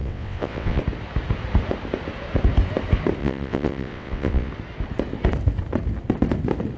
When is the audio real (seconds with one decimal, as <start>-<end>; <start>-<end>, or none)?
0.8-3.2; 4.5-6.8